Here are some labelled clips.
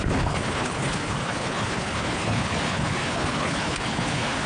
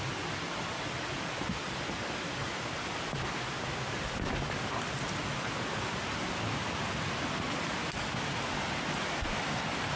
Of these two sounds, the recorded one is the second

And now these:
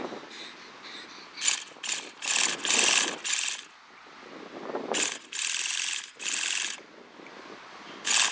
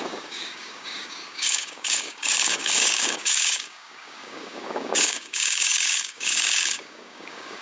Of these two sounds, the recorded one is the first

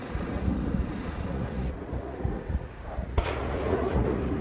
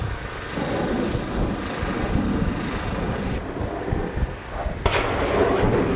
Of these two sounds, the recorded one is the second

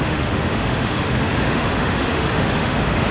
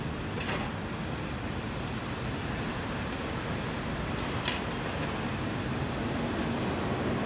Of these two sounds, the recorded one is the second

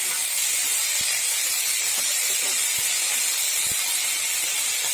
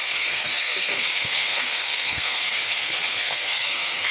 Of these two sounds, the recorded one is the first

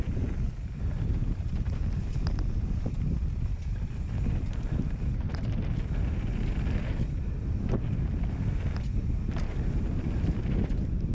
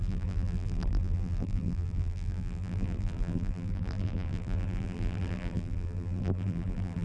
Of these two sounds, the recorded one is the first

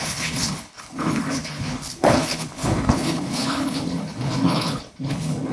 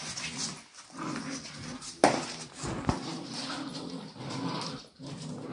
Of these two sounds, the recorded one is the second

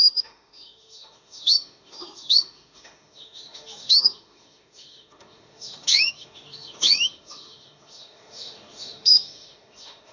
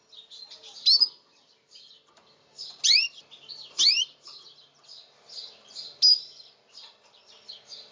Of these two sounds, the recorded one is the second